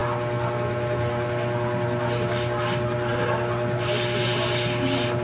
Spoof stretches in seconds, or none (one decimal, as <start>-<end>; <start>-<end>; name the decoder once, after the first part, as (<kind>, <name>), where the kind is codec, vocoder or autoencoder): none